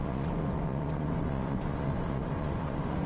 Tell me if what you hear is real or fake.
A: fake